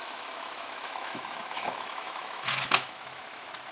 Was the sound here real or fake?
fake